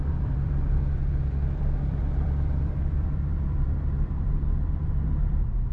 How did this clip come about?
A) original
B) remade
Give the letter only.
B